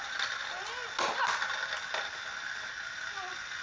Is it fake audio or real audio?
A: real